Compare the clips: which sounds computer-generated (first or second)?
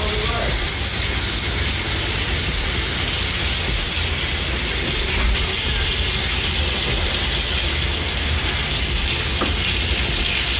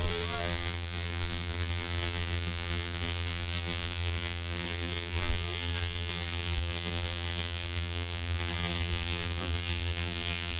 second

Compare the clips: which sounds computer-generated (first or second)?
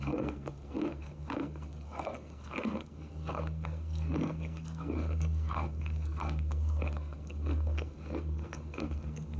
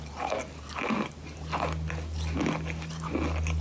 first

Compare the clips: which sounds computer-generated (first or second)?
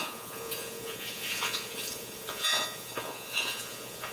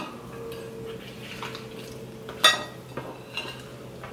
first